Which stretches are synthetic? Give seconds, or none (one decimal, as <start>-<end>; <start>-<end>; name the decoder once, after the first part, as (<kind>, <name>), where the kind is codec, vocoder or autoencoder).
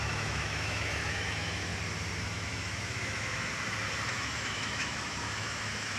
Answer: 0.0-1.7 (autoencoder, DAC-VAE); 2.2-3.5; 4.1-6.0